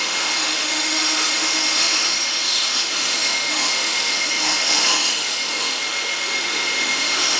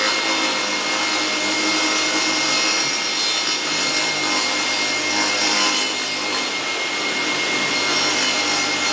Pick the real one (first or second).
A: second